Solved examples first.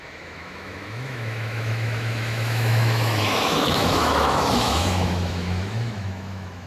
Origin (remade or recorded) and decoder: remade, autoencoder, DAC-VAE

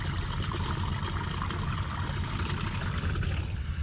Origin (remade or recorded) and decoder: recorded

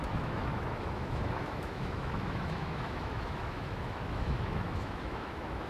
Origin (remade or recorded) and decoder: remade, autoencoder, DAC-VAE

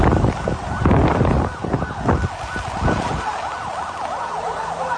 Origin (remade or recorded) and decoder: recorded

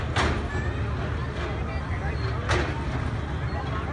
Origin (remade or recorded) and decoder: recorded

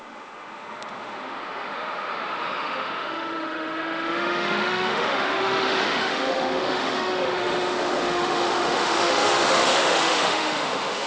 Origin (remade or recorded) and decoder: remade, autoencoder, DAC-VAE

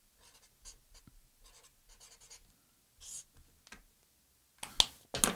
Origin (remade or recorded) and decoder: recorded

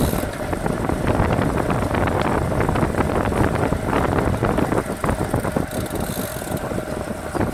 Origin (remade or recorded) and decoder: recorded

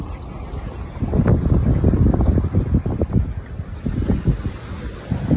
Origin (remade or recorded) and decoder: recorded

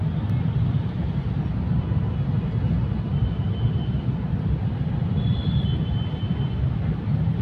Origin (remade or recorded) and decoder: recorded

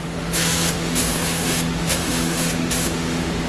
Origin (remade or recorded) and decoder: remade, autoencoder, DAC-VAE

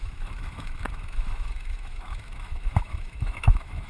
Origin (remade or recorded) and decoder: remade, autoencoder, DAC-VAE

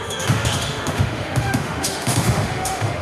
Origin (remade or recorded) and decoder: remade, autoencoder, DAC-VAE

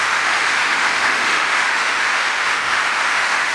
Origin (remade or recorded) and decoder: remade, autoencoder, DAC-VAE